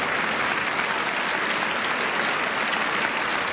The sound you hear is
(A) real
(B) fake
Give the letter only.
A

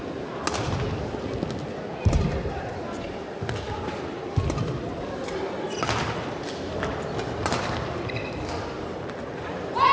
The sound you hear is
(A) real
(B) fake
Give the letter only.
A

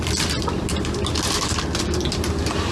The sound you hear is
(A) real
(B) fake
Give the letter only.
A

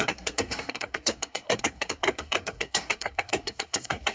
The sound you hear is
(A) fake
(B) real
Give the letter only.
A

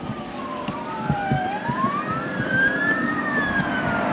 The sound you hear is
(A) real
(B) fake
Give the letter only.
B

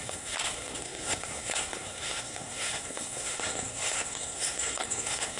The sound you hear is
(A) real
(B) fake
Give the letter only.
B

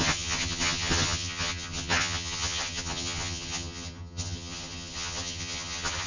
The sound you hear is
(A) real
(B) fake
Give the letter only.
B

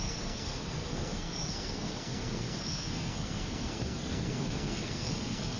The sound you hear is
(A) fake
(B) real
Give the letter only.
A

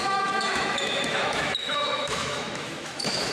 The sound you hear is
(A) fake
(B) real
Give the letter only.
A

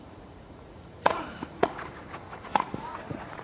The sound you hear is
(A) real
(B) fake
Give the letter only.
B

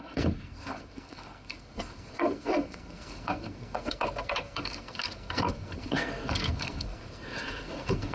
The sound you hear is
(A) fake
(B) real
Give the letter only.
A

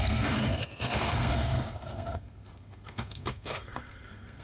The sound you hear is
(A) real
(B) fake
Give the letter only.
B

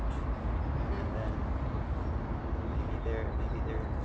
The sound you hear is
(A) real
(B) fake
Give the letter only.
A